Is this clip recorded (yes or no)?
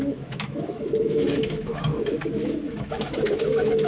no